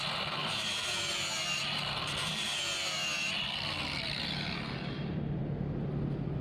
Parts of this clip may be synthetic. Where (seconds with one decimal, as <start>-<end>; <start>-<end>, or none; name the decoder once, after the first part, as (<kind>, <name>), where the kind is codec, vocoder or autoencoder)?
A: 0.0-5.4 (vocoder, BigVGAN v2)

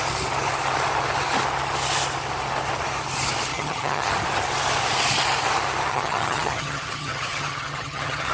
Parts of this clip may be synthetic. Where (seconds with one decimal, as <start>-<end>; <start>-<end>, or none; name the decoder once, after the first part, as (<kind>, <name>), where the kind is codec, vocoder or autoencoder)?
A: 3.5-4.1 (vocoder, HiFi-GAN); 5.9-8.3

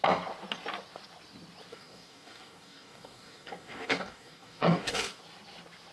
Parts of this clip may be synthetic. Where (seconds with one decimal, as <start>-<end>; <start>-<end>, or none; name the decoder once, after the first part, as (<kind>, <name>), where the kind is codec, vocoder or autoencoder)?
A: 1.7-5.2 (codec, DAC)

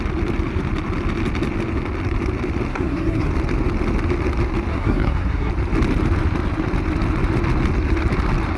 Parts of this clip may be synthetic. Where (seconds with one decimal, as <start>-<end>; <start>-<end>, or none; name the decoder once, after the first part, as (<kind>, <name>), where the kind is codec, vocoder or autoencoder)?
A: 2.7-3.3 (codec, SNAC); 4.7-5.5